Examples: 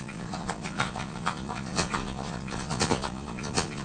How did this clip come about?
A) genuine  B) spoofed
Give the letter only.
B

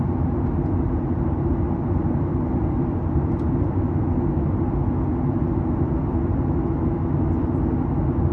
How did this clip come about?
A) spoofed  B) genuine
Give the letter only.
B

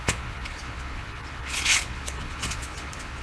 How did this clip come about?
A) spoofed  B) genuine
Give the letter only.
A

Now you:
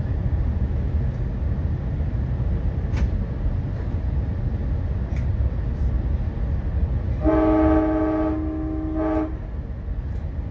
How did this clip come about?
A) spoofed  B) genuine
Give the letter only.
B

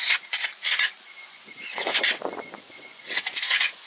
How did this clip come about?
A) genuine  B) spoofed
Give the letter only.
B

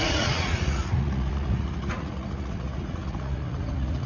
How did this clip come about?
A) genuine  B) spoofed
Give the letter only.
B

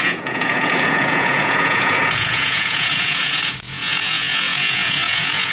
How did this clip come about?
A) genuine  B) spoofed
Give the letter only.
B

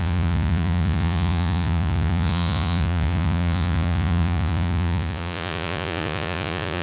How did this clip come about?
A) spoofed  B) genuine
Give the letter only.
A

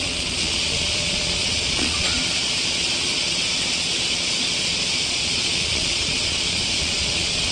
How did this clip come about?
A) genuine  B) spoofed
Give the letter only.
B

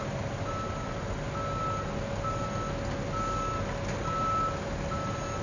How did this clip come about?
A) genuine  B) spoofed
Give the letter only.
A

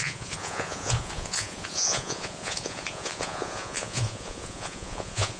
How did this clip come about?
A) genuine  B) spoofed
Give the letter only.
B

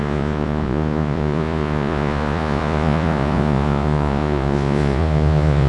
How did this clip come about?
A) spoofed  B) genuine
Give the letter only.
A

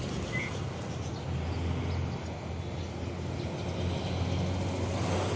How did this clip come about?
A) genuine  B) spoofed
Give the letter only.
A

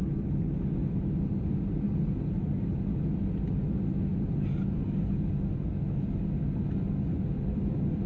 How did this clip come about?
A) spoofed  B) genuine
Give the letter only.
B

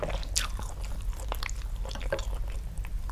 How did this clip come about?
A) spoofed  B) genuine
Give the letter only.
B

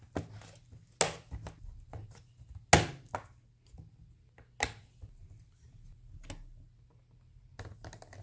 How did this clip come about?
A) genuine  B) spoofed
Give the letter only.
A